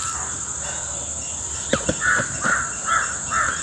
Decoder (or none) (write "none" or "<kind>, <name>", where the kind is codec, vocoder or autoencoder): none